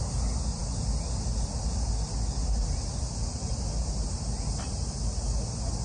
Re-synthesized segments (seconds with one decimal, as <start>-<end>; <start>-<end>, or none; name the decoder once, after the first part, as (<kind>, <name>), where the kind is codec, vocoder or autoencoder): none